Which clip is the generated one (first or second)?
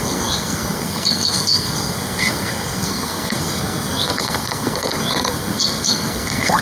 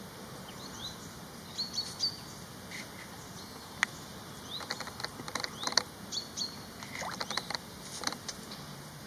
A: first